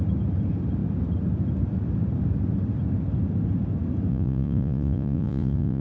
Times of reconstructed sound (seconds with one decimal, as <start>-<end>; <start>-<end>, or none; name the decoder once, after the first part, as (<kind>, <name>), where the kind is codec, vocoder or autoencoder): 4.1-5.8 (vocoder, Vocos)